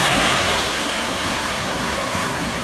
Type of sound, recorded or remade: remade